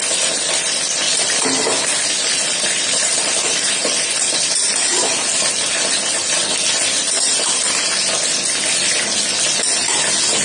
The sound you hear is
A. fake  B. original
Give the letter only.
B